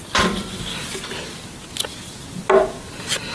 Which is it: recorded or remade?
recorded